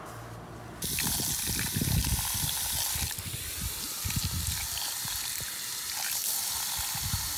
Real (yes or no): yes